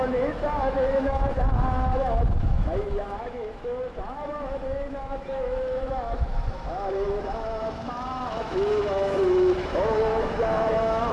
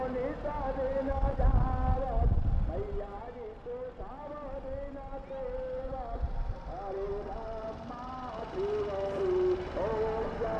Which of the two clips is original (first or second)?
second